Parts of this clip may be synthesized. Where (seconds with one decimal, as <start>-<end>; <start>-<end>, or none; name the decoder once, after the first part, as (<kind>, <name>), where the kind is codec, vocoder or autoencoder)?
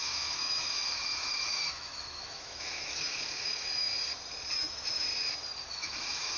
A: 0.0-3.9 (autoencoder, DAC-VAE); 4.5-5.1; 5.7-6.4